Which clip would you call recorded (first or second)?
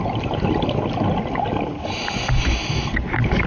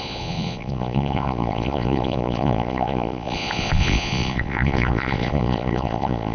first